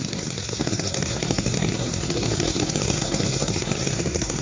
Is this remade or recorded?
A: remade